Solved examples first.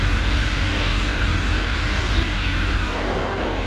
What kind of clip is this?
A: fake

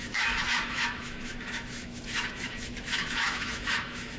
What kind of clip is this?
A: fake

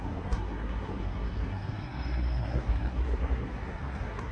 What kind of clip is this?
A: fake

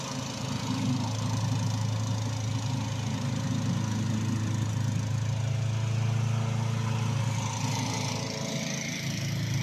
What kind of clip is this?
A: real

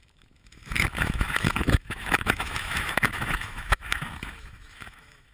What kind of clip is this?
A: fake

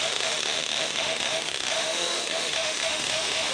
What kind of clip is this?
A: fake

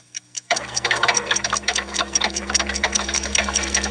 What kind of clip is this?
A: fake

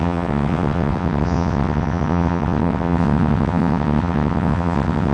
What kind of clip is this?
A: fake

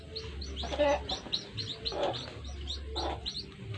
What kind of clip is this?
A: real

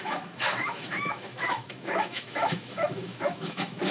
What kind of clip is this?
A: fake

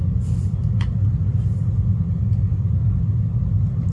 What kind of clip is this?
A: real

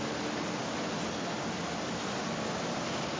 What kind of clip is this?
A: real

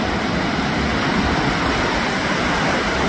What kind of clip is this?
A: real